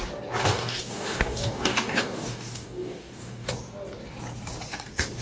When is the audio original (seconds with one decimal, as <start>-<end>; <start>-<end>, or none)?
0.0-0.4; 3.5-5.2